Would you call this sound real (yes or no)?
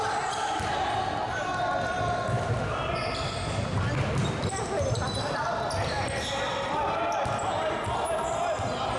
yes